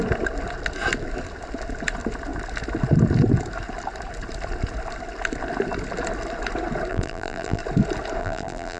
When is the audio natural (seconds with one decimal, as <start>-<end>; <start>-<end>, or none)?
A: 0.0-6.9; 7.6-8.2